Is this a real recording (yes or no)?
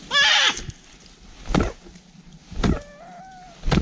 yes